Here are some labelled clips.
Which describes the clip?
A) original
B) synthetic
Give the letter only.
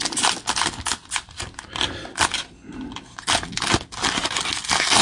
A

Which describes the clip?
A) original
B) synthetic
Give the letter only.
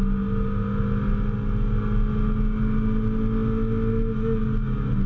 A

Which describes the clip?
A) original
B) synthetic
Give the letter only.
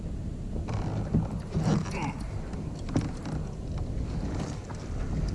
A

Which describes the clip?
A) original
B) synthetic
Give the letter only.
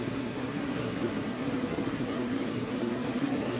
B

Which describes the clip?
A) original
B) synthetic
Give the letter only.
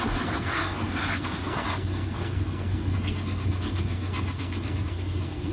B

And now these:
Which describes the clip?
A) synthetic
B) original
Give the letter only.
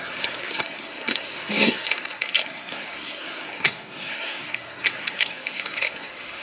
A